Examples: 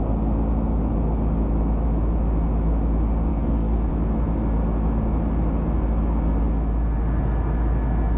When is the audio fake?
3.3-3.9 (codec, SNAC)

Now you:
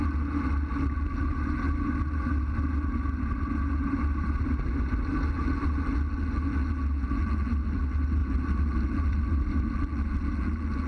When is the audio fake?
none